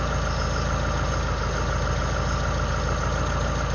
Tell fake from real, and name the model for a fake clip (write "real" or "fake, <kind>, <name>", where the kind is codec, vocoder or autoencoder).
real